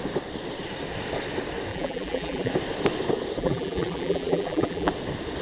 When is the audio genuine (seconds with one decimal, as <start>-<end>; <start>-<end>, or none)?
0.0-1.7; 2.5-3.4; 4.9-5.4